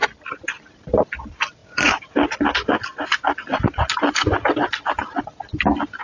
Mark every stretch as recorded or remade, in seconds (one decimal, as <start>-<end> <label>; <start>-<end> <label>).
0.0-0.6 remade; 0.6-6.0 recorded